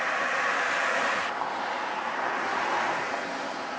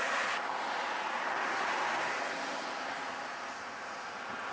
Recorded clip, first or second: first